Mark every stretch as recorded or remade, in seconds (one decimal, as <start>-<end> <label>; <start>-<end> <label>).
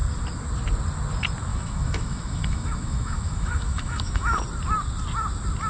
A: 0.0-1.5 recorded; 1.5-4.4 remade; 4.4-5.7 recorded